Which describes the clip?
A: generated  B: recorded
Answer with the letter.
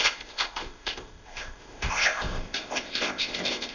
A